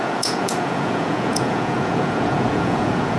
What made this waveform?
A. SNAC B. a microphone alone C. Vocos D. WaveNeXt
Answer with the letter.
C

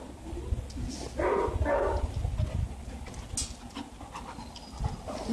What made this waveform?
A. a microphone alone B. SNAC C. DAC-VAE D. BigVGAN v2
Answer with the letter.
A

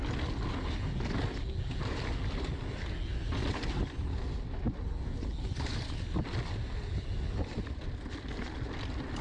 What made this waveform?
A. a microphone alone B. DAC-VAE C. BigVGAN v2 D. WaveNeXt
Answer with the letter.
A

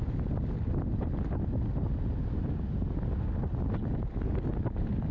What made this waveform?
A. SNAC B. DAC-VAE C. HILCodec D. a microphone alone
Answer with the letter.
D